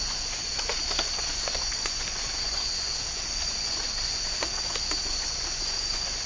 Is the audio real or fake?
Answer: fake